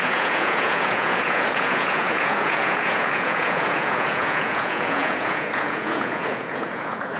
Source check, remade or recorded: remade